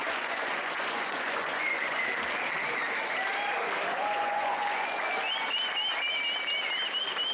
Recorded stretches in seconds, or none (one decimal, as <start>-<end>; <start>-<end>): 2.0-3.9; 5.0-7.3